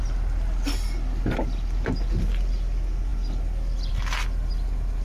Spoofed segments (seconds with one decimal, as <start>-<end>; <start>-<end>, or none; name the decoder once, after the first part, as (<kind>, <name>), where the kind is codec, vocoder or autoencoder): none